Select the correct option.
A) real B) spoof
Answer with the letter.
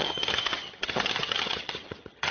B